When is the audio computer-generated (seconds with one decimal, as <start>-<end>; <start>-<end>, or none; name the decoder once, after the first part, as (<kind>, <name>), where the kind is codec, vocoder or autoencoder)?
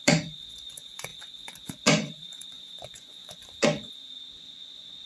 0.0-5.1 (vocoder, Vocos)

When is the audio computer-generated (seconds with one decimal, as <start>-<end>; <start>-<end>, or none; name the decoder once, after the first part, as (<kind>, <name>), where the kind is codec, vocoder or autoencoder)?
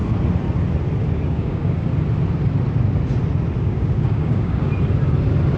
1.1-1.9 (codec, DAC); 3.6-4.7